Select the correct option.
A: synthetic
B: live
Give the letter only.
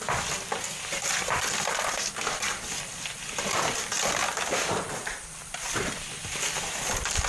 B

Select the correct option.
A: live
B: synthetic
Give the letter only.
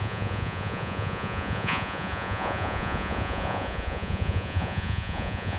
B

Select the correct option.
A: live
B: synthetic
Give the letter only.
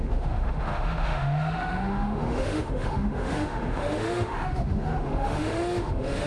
B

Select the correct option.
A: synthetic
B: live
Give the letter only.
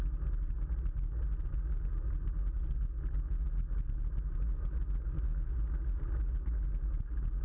B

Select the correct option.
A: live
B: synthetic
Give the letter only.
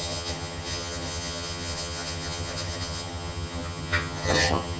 B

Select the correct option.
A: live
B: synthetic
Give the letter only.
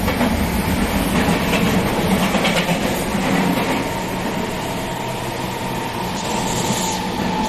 A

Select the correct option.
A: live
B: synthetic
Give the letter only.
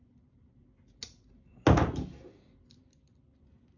A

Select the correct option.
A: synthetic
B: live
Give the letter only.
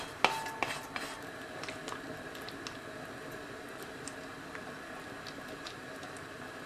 B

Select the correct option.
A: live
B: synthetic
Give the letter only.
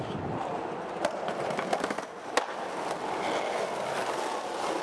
A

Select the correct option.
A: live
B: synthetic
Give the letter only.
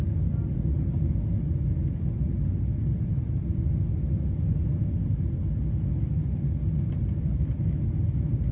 A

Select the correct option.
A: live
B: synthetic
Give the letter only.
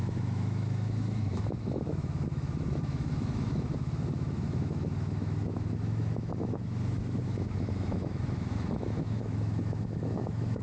B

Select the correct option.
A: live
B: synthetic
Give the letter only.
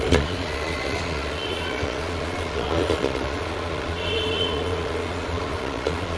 B